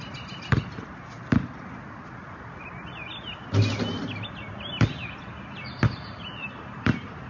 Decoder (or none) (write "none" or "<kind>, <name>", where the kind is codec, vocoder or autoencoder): none